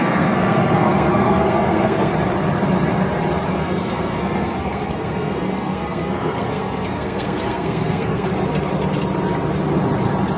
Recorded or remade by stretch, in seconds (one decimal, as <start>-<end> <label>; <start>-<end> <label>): 0.0-2.1 remade; 2.1-3.5 recorded; 3.5-8.3 remade; 8.3-10.4 recorded